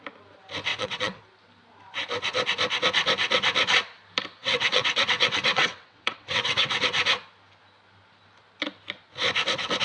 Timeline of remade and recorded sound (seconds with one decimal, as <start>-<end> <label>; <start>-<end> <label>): 0.0-0.7 recorded; 0.7-1.2 remade; 1.2-4.4 recorded; 4.4-6.8 remade; 6.8-9.8 recorded